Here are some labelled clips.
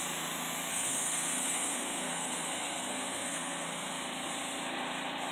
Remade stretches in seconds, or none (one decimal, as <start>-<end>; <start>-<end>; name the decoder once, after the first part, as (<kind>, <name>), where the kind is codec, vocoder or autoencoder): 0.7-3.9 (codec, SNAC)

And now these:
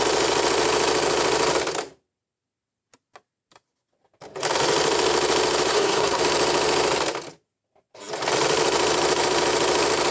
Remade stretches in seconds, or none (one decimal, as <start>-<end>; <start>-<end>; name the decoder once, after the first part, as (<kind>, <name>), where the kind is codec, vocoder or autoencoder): 5.7-6.2 (codec, SNAC)

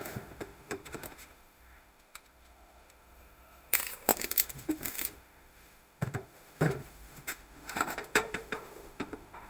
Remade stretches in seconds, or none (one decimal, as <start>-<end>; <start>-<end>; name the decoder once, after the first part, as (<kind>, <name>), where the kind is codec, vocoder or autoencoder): 0.0-9.5 (autoencoder, DAC-VAE)